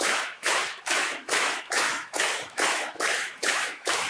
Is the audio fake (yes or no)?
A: yes